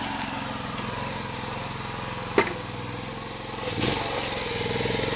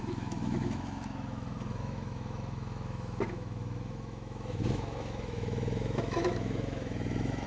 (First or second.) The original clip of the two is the first